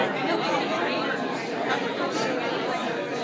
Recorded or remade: recorded